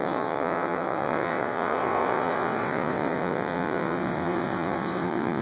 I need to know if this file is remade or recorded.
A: remade